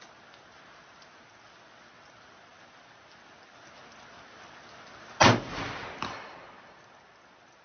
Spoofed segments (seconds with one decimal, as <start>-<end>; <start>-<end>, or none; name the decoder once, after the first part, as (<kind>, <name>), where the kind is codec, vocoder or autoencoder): none